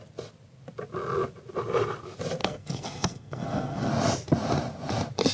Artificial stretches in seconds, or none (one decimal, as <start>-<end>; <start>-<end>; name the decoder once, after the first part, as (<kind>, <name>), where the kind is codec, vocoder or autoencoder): 2.4-3.9 (codec, SNAC)